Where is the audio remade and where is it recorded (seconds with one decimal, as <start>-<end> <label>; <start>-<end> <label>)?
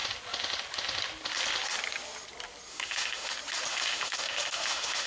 0.0-2.7 recorded; 2.7-3.3 remade; 3.3-3.7 recorded; 3.7-5.1 remade